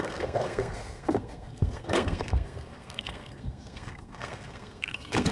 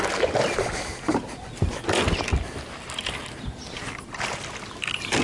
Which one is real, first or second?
second